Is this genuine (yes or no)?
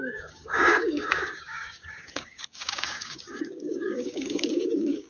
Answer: no